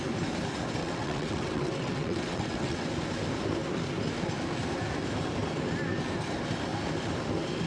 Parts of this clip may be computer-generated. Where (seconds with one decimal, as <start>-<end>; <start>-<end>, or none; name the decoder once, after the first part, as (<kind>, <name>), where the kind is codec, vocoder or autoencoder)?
0.8-2.9 (vocoder, WaveNeXt)